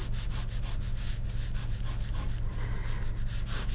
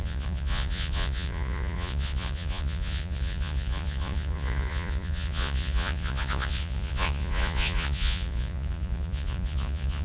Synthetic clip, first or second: second